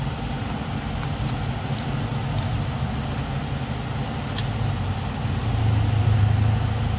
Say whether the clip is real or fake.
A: real